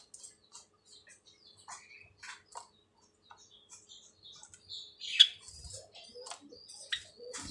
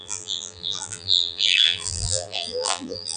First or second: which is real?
first